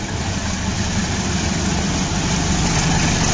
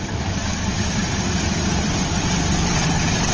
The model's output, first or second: second